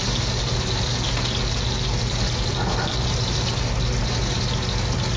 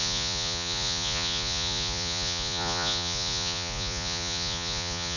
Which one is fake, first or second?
second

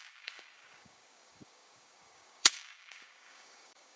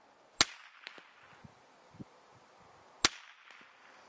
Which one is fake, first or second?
first